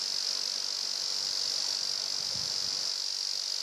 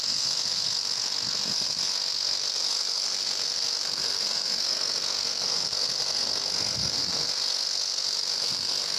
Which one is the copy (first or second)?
second